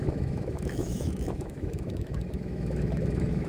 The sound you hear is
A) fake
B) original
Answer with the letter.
A